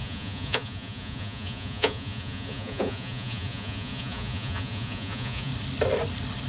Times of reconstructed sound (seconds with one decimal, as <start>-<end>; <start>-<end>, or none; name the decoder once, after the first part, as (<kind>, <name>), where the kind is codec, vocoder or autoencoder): 0.0-5.5 (vocoder, Vocos)